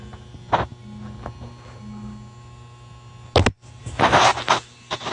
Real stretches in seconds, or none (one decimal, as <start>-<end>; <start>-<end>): 0.0-5.1